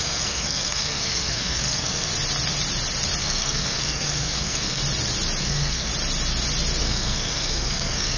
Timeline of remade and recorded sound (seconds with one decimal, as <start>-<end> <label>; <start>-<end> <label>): 0.0-2.1 remade; 2.1-3.2 recorded; 3.2-4.8 remade; 4.8-5.4 recorded; 5.4-5.9 remade; 5.9-6.8 recorded; 6.8-8.2 remade